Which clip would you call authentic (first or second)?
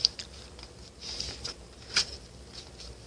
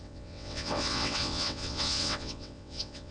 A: first